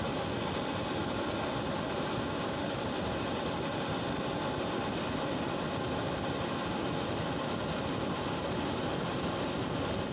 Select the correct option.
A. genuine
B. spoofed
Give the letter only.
A